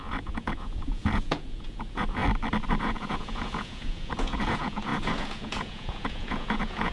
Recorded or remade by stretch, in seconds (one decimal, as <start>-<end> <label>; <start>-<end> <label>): 0.0-2.2 remade; 2.2-2.8 recorded; 2.8-6.9 remade